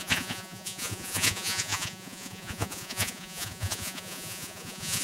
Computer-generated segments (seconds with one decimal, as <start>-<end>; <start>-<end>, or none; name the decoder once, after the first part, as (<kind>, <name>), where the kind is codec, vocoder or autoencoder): 0.0-5.0 (vocoder, Vocos)